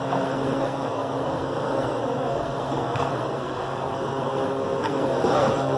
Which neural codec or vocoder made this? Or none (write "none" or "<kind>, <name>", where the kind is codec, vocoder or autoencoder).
codec, SNAC